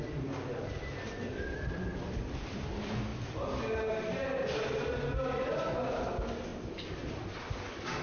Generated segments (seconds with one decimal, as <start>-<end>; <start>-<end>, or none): none